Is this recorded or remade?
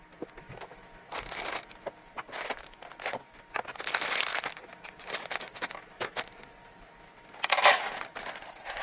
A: recorded